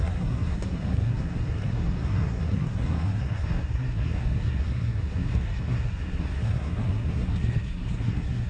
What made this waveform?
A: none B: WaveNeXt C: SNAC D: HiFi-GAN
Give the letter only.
C